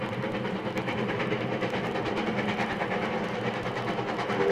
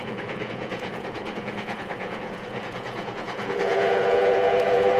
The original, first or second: first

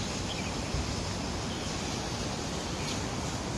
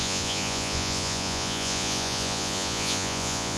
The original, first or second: first